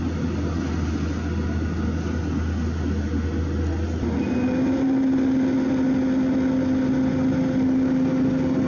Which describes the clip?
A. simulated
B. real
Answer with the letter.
B